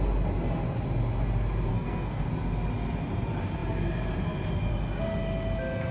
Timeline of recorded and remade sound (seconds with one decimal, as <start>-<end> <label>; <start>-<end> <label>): 0.0-1.7 recorded; 1.7-2.3 remade; 2.3-5.9 recorded